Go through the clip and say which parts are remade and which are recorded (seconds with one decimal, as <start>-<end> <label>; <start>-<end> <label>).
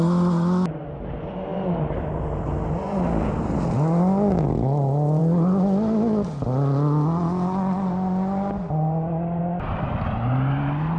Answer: 0.0-11.0 recorded